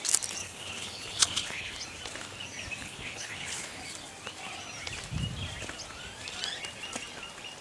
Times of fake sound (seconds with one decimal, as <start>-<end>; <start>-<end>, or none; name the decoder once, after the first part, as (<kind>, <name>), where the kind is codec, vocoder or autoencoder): 0.4-1.7 (codec, HILCodec); 2.8-3.8